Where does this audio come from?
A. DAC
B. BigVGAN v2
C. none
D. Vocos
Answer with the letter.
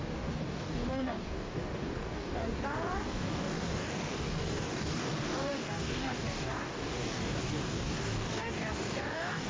A